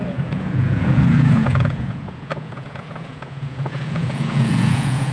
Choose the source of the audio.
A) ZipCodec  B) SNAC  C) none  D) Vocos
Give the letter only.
D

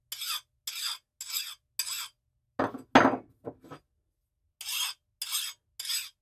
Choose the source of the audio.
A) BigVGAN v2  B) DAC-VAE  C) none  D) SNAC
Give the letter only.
C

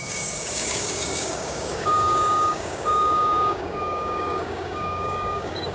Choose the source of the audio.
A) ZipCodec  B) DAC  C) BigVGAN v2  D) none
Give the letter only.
B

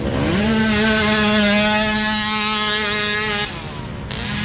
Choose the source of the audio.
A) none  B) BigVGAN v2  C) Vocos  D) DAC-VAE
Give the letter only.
A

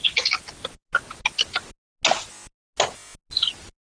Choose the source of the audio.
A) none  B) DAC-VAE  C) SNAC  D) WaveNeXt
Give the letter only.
A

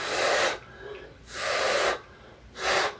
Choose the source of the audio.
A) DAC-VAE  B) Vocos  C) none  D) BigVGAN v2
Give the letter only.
C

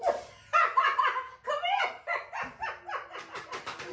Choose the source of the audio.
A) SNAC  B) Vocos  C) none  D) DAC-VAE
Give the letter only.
C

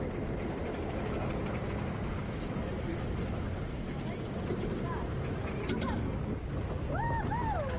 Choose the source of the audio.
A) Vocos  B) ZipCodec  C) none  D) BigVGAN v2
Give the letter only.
C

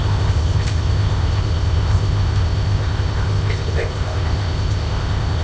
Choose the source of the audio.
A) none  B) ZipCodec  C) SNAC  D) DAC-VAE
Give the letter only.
B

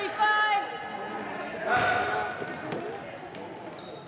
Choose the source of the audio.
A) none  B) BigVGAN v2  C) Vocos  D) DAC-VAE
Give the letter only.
A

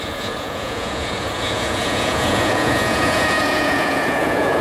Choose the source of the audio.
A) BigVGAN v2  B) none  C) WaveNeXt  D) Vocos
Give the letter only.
D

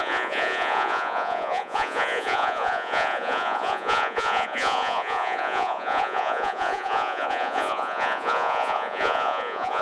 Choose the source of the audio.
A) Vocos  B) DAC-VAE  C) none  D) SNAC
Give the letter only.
A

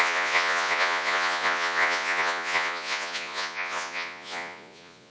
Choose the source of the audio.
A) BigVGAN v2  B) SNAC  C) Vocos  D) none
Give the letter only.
C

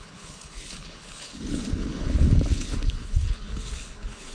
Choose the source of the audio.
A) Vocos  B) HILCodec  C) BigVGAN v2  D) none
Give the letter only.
B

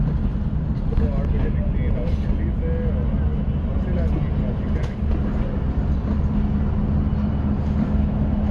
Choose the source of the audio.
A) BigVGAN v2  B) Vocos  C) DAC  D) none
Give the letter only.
D